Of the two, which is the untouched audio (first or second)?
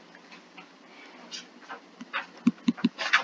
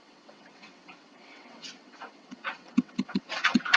first